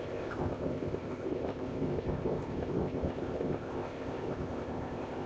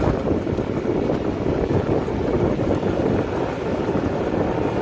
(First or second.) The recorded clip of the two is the second